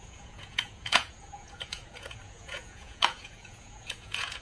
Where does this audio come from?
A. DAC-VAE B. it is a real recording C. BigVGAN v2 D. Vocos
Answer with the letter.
D